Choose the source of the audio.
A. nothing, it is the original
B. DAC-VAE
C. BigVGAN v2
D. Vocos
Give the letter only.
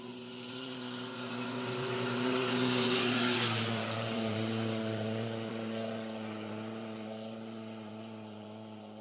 D